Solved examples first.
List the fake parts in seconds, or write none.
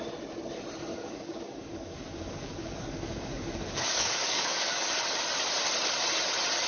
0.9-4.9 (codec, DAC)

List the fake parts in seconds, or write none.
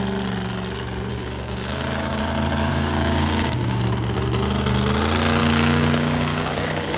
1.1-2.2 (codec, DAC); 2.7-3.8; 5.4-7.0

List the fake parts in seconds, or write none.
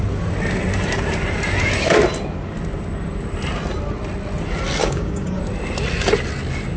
4.8-5.4 (codec, DAC)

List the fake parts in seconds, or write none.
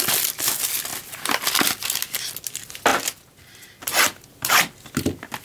none